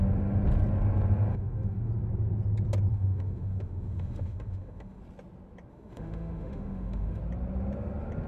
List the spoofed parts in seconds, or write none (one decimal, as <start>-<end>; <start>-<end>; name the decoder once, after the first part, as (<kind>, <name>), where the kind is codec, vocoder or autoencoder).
1.3-1.9 (autoencoder, DAC-VAE); 2.9-5.0; 5.7-7.2